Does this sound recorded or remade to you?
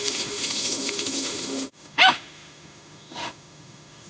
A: remade